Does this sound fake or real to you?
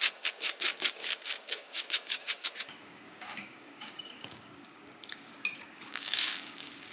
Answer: fake